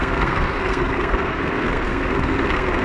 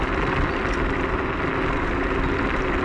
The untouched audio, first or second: second